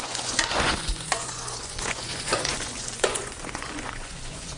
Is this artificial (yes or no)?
yes